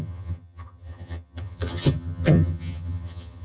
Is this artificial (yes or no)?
yes